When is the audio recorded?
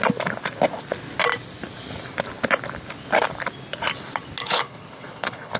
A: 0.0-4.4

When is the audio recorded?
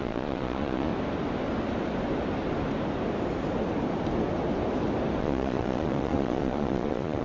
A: 0.9-5.2